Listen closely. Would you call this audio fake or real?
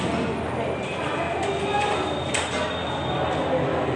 real